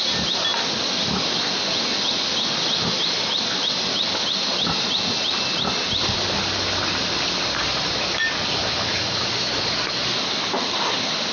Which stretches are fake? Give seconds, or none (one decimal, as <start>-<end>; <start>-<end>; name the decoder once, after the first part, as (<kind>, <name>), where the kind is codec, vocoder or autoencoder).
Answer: none